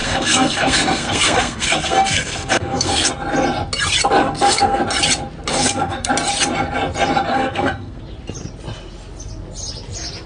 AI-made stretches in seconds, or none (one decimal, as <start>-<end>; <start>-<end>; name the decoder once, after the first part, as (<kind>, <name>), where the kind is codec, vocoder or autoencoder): 0.0-3.1 (codec, SNAC); 4.2-4.8; 5.5-6.1; 7.3-8.0